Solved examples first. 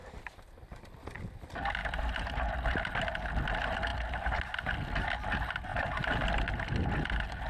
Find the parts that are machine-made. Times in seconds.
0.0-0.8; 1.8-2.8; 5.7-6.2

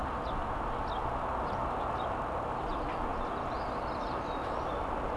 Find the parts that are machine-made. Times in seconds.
none